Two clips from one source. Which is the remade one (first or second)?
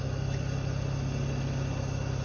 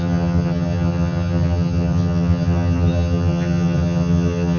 second